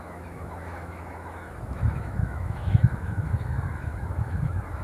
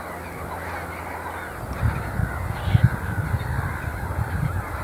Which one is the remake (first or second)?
first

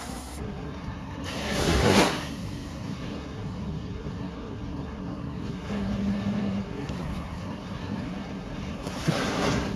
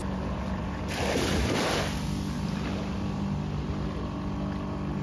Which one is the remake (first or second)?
first